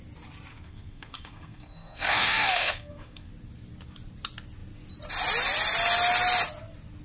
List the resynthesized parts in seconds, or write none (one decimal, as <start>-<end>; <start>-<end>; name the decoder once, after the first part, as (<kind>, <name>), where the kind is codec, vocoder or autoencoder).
0.5-3.3 (codec, SNAC)